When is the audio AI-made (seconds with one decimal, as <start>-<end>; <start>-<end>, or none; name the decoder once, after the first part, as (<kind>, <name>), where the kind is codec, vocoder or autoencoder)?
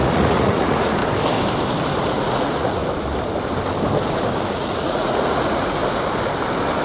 0.0-1.0 (vocoder, Vocos); 2.0-2.8; 4.5-5.8